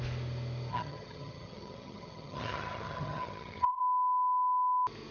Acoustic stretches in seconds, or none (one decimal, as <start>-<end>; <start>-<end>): 0.0-0.7; 3.8-5.1